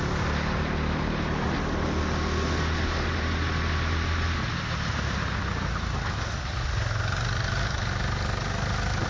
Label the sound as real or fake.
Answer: real